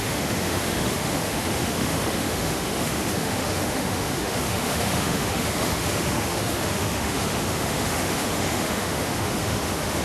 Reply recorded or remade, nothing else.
remade